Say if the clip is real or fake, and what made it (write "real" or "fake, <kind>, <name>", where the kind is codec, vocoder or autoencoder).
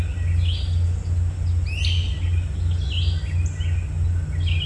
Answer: real